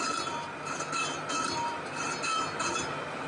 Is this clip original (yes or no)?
yes